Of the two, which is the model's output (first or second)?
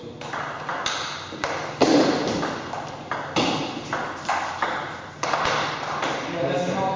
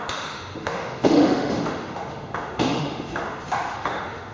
second